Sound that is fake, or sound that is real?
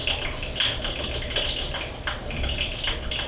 real